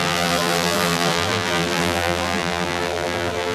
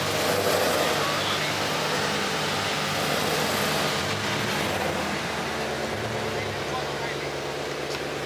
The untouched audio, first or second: second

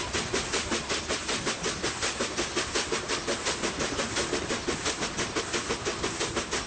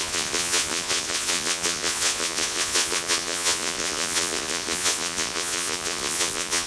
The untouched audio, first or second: first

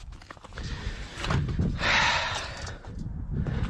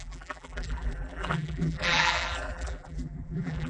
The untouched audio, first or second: first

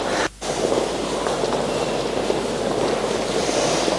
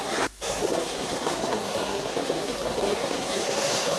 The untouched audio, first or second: first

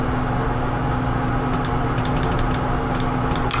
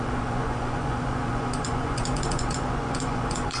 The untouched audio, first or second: first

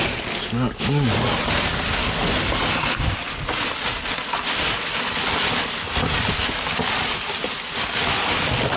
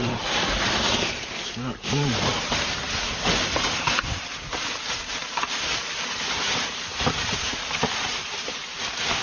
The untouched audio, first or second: first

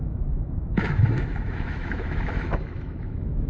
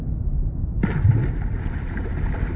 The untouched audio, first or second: second